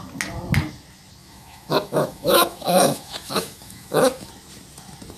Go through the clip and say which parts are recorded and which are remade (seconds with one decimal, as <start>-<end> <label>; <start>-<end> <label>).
0.0-1.2 recorded; 1.2-4.3 remade; 4.3-5.2 recorded